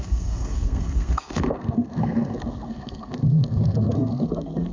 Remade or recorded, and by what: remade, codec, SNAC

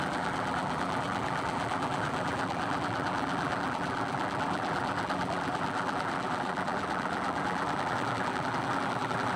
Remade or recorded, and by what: remade, vocoder, BigVGAN v2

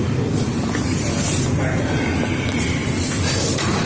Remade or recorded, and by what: recorded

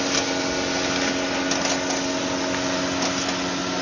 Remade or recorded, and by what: recorded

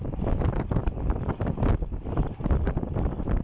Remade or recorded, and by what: remade, vocoder, BigVGAN v2